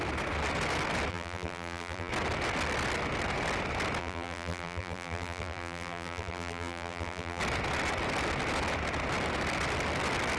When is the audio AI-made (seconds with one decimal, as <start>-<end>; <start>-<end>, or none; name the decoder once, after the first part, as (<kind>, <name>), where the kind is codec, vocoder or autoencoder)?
1.1-2.1 (vocoder, BigVGAN v2); 4.0-7.4